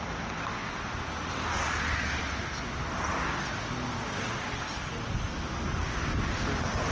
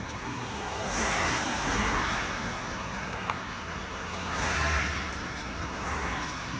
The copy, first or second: second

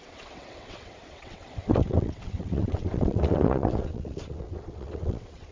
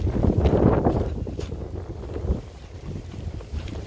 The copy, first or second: first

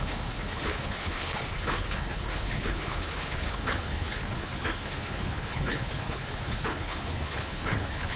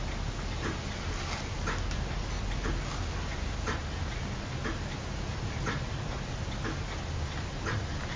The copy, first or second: first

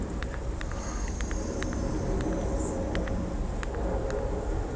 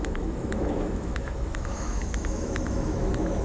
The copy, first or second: second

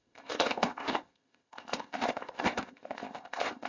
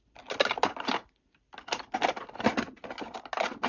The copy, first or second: first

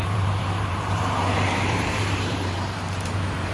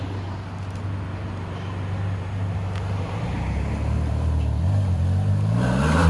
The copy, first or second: first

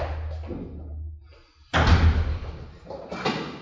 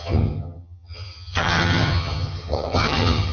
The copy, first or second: second